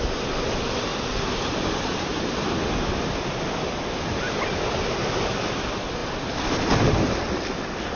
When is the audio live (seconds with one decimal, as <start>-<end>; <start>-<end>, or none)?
0.0-8.0